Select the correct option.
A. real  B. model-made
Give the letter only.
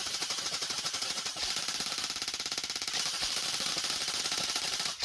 B